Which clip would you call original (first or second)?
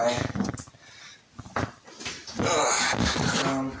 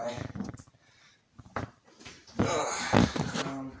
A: first